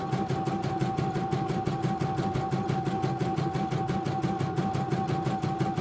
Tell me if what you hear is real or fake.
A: real